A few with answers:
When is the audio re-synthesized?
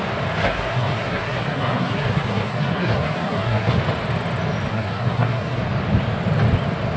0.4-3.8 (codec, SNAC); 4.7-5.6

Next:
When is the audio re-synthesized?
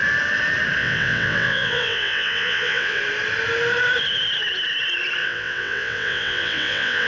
0.8-3.0 (vocoder, WaveNeXt); 5.2-7.1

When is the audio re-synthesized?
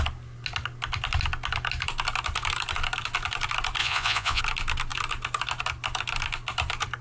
3.8-4.4 (vocoder, Vocos)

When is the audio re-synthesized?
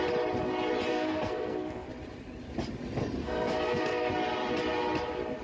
0.9-1.9 (codec, SNAC); 3.2-4.1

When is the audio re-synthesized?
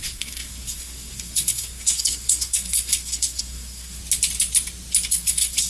0.0-4.0 (codec, SNAC); 5.1-5.7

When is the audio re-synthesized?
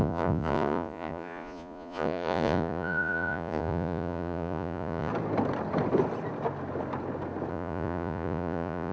0.0-5.1 (vocoder, Vocos); 7.5-8.9